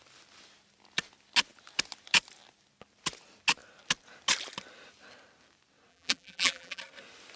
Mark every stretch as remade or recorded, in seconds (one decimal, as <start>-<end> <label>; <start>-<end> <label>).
0.0-5.9 recorded; 5.9-6.8 remade; 6.8-7.4 recorded